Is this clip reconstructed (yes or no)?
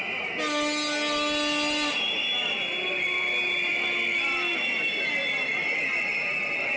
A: no